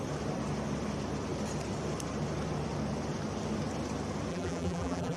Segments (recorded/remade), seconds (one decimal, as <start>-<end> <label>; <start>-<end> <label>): 0.0-4.3 recorded; 4.3-5.2 remade